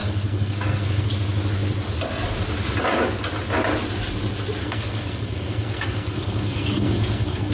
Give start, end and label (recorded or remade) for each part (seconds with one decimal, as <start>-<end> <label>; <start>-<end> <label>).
0.0-1.1 remade; 1.1-4.6 recorded; 4.6-7.5 remade